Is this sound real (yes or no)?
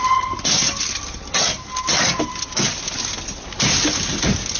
yes